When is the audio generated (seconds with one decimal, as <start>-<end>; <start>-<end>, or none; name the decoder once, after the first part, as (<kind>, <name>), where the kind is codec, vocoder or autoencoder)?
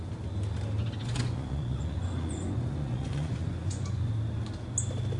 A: 1.0-4.1 (vocoder, Vocos)